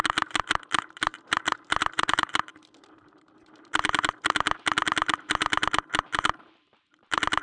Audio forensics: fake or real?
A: fake